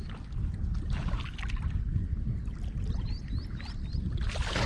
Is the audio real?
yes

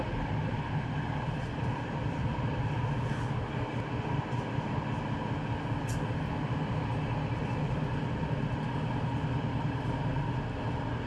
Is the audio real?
yes